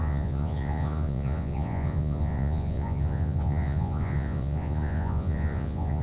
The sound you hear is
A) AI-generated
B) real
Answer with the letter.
A